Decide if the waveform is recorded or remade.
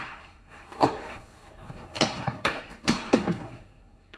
remade